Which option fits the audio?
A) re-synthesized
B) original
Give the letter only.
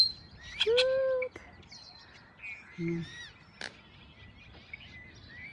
B